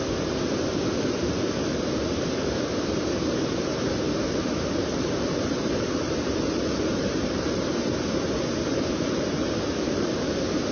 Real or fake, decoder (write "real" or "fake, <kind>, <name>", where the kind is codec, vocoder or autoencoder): fake, vocoder, BigVGAN v2